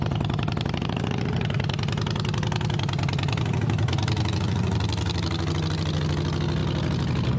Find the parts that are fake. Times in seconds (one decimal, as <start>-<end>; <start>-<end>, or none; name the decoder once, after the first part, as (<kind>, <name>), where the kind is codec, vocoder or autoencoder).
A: none